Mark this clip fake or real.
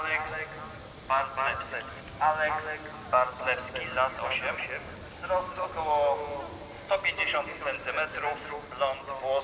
real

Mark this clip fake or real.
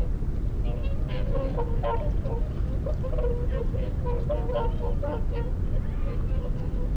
real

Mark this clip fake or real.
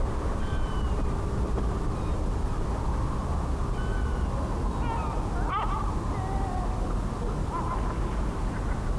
real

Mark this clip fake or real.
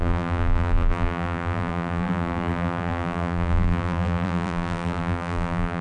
fake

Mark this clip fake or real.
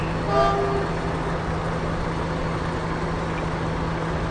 real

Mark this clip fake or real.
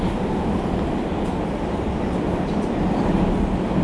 real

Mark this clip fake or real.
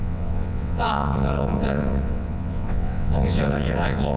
fake